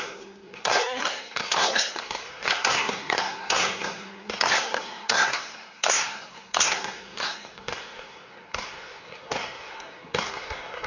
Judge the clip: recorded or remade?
remade